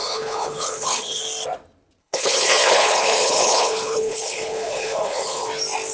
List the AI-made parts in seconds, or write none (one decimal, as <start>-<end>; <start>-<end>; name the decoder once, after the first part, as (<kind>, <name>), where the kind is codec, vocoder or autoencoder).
0.0-1.2 (codec, HILCodec); 2.0-5.5

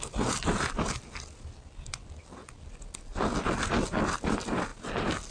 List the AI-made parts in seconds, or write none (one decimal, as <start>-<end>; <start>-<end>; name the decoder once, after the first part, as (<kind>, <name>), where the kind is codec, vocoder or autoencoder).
none

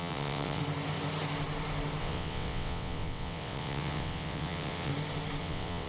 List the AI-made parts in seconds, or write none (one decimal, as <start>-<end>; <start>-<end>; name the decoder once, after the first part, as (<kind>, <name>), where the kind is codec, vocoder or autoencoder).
0.0-0.6 (vocoder, WaveNeXt); 2.0-4.9; 5.4-5.9

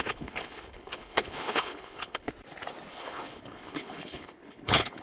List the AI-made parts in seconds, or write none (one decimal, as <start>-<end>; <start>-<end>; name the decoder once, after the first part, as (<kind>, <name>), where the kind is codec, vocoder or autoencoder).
0.0-2.3 (codec, HILCodec); 2.9-5.0

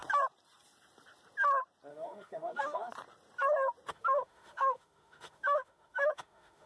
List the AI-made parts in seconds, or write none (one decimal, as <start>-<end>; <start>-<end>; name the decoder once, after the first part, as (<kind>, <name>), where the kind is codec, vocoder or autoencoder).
1.9-2.9 (autoencoder, DAC-VAE); 3.9-6.7

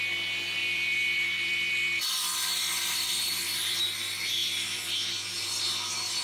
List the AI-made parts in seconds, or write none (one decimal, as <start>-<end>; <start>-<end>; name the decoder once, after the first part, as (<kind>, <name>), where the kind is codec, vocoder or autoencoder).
0.6-3.8 (vocoder, BigVGAN v2); 4.4-5.6